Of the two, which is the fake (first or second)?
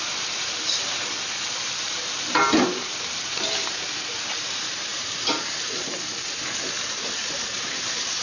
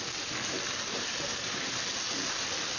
first